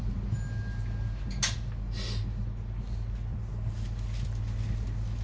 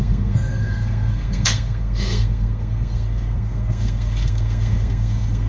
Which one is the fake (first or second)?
second